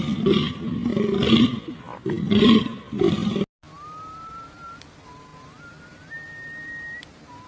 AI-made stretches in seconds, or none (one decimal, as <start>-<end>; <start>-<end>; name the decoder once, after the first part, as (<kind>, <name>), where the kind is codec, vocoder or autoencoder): none